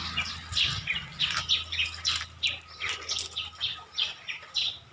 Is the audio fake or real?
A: real